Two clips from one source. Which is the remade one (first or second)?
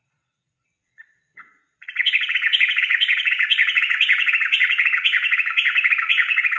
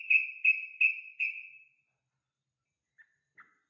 first